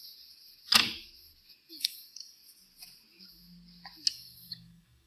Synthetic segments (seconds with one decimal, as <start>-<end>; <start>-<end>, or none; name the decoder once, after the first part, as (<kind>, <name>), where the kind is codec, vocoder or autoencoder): 1.7-2.4 (codec, DAC); 4.1-5.1